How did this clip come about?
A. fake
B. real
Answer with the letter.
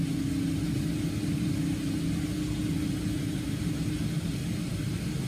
B